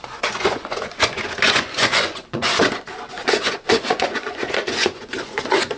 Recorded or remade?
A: remade